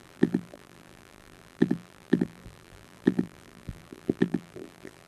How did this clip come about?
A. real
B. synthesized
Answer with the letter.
B